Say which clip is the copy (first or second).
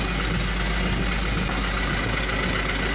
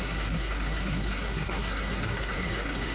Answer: second